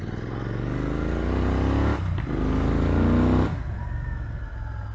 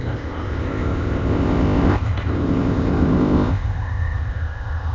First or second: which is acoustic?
first